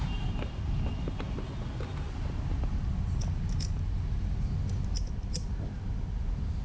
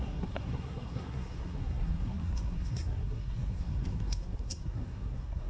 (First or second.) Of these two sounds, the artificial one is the second